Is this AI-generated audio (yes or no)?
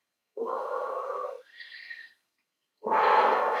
yes